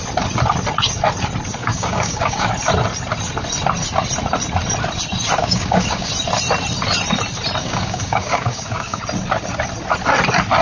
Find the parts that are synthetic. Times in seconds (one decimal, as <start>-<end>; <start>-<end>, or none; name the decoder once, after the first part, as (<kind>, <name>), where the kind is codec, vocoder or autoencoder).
1.6-2.5 (codec, DAC); 5.4-6.1; 7.6-9.0